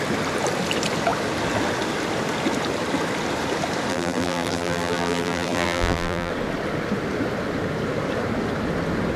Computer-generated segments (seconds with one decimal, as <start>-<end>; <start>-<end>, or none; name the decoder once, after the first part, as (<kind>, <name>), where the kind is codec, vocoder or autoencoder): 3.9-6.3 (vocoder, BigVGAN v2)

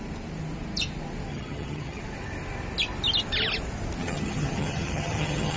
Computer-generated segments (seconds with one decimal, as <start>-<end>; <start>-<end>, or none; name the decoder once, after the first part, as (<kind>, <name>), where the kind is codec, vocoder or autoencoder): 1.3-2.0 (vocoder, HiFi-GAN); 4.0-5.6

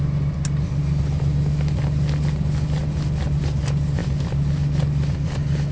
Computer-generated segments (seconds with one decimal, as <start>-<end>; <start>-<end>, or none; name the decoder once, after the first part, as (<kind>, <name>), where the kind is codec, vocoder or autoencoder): none